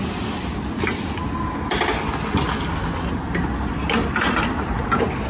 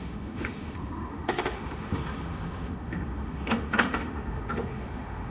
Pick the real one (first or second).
first